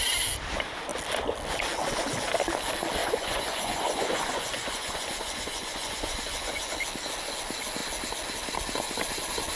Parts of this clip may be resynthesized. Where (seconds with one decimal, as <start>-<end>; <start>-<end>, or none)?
3.0-6.7

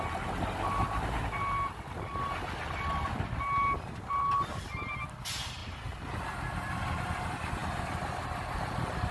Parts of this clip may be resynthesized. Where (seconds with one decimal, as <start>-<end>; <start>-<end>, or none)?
none

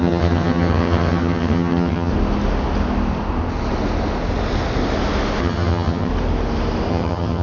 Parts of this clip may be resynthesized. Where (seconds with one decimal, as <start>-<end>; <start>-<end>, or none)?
0.0-2.1; 5.4-6.1; 6.9-7.4

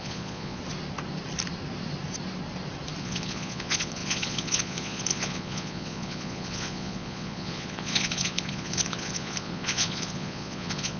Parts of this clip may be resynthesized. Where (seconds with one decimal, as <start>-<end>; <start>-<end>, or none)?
0.0-0.6; 3.0-11.0

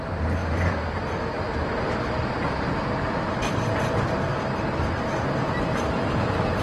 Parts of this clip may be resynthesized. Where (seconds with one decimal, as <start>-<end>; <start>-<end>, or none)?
0.0-0.4; 1.2-4.3; 4.9-6.6